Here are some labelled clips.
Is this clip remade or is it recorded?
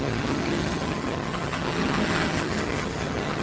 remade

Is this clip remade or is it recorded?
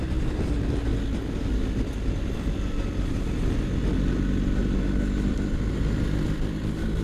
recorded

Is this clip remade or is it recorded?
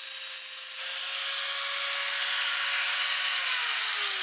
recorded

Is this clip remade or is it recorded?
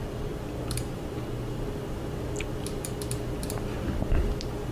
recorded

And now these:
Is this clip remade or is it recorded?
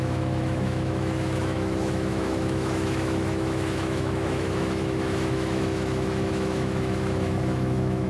remade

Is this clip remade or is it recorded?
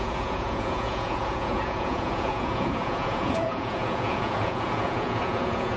remade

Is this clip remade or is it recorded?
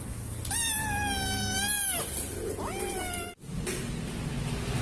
recorded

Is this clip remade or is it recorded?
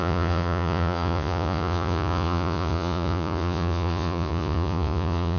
remade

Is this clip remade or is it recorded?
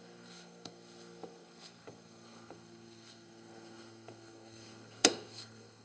remade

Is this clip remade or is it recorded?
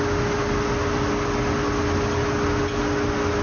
recorded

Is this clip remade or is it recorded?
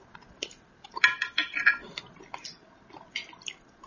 recorded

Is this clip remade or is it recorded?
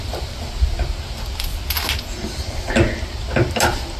recorded